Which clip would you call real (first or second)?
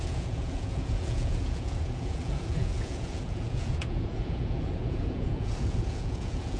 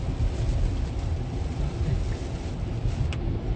second